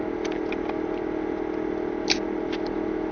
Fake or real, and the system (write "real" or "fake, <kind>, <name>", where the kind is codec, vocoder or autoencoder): real